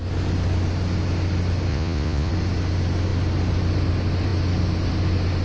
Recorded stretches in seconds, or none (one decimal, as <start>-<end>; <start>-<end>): 0.0-1.7; 2.3-5.4